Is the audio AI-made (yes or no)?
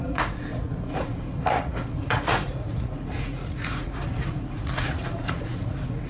yes